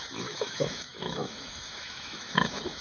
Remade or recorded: remade